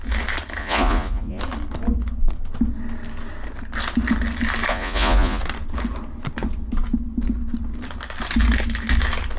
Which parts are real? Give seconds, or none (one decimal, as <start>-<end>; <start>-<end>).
0.0-0.6; 1.4-4.7; 5.4-9.4